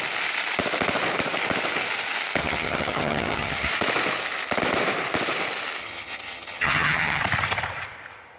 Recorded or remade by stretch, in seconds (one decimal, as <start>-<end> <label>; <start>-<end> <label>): 0.0-2.4 recorded; 2.4-3.7 remade; 3.7-5.8 recorded; 5.8-7.2 remade; 7.2-8.4 recorded